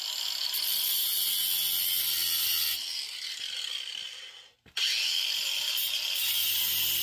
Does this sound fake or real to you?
real